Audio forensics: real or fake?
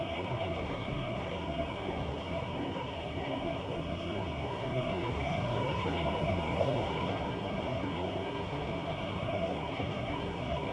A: fake